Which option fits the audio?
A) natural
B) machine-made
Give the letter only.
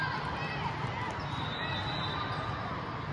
A